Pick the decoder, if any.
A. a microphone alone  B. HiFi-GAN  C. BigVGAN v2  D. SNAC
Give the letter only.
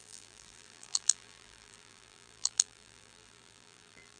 C